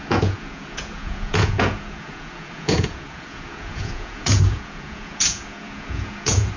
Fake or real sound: fake